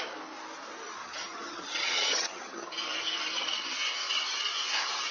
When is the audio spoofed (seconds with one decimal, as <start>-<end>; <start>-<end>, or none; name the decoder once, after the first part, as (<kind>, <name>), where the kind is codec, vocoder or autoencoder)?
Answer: 1.0-2.7 (vocoder, HiFi-GAN)